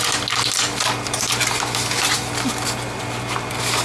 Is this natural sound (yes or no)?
yes